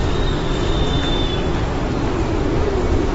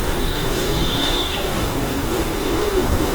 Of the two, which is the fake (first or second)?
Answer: second